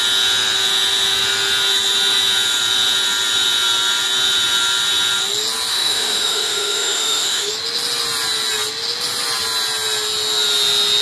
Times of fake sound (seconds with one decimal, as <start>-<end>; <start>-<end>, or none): 5.7-7.5